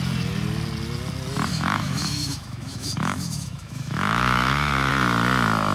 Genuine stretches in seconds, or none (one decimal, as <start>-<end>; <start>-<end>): 0.0-1.5; 4.9-5.7